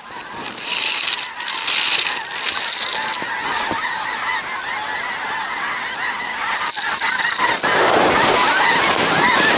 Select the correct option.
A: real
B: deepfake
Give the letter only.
A